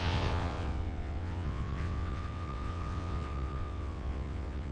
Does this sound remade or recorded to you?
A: remade